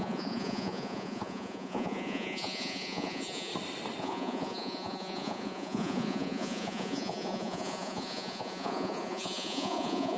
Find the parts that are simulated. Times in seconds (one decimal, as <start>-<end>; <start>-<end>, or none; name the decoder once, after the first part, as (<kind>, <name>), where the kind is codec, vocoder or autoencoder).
0.0-3.5 (vocoder, Vocos); 4.0-10.2

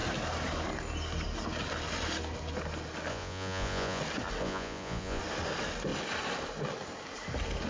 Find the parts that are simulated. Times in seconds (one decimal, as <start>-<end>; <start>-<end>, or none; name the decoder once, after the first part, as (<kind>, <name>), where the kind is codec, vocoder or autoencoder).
3.1-4.0 (vocoder, Vocos); 4.4-5.2